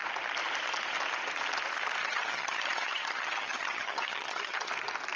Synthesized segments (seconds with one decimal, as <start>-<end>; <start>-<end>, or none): 2.0-4.7